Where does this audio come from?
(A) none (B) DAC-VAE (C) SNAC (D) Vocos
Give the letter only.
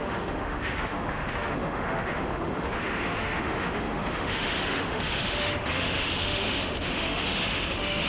B